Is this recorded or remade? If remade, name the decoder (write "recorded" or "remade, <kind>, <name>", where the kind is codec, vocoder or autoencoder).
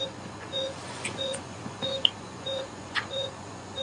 remade, vocoder, Vocos